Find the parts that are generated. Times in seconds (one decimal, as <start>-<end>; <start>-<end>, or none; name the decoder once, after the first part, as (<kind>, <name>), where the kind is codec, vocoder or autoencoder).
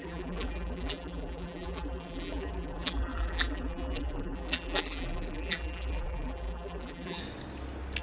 0.0-7.2 (vocoder, BigVGAN v2)